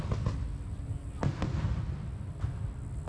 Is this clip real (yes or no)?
yes